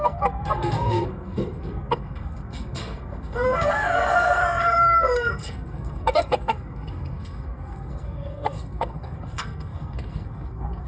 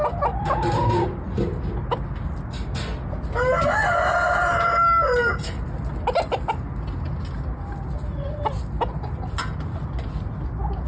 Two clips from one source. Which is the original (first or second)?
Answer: second